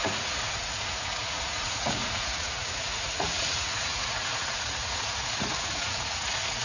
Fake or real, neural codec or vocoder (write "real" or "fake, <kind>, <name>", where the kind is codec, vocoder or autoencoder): fake, vocoder, Vocos